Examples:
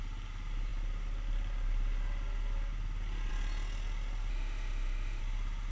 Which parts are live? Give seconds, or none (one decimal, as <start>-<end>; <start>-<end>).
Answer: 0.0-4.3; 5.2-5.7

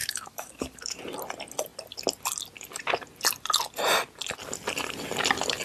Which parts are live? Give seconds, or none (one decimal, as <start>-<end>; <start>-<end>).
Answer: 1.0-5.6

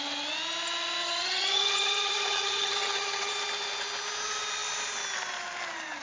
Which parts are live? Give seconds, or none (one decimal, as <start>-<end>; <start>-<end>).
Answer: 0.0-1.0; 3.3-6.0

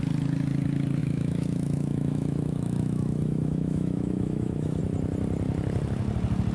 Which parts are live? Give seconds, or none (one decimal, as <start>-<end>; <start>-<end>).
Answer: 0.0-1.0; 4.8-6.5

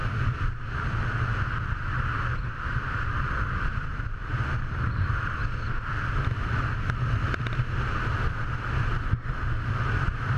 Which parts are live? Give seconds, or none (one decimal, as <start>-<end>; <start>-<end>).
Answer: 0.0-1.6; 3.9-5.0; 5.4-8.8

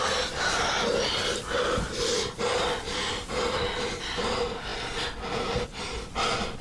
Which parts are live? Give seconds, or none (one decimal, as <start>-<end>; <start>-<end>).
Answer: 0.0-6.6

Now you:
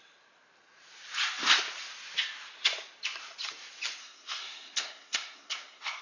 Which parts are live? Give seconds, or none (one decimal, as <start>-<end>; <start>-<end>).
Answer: 0.0-4.0

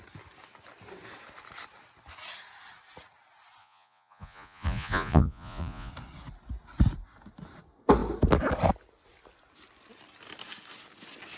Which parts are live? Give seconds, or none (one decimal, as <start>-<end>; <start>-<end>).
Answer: 0.0-3.6; 5.9-11.4